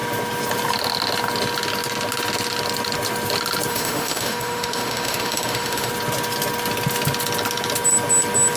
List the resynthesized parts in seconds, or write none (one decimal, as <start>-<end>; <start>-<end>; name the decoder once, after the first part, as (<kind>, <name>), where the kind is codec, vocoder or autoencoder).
3.7-5.9 (autoencoder, DAC-VAE)